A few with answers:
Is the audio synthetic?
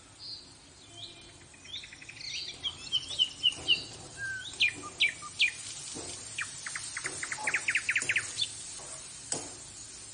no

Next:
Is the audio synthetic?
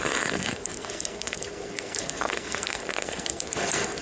yes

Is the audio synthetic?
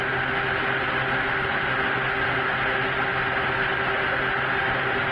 no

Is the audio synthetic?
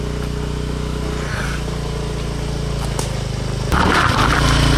no